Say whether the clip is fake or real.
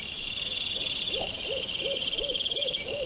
fake